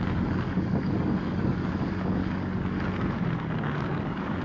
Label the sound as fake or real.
fake